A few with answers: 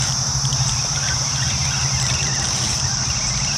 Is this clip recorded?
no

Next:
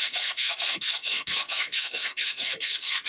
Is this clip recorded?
no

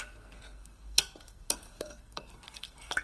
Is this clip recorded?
no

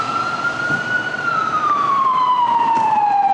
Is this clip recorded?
no